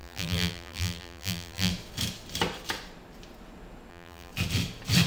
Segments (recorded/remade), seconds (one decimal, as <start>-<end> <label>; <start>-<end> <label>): 0.0-1.7 remade; 1.7-3.9 recorded; 3.9-4.3 remade; 4.3-5.1 recorded